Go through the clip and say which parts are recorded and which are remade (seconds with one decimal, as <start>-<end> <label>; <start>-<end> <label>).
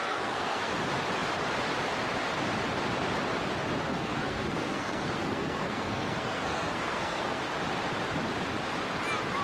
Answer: 0.0-0.7 remade; 0.7-3.9 recorded; 3.9-7.4 remade; 7.4-9.4 recorded